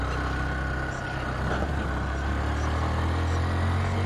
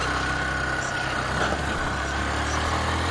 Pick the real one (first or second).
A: first